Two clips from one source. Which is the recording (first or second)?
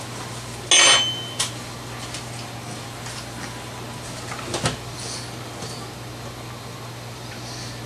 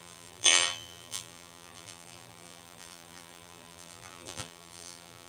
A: first